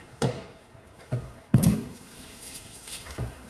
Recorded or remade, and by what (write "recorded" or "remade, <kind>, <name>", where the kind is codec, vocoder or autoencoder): remade, codec, SNAC